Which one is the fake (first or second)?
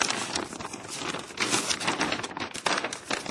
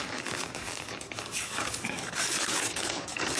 second